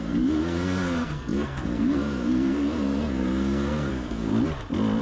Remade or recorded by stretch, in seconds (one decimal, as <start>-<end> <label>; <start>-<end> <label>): 0.0-4.3 remade; 4.3-5.0 recorded